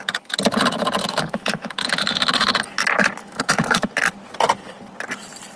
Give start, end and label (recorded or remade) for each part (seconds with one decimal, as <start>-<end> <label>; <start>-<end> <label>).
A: 0.0-1.0 recorded; 1.0-2.6 remade; 2.6-3.2 recorded; 3.2-3.9 remade; 3.9-5.6 recorded

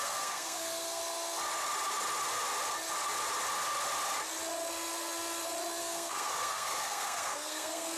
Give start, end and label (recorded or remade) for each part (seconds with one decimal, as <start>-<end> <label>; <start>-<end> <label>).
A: 0.0-1.0 remade; 1.0-5.8 recorded; 5.8-8.0 remade